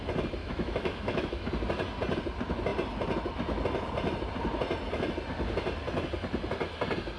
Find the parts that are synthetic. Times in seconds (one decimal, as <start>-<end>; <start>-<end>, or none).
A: 0.4-1.5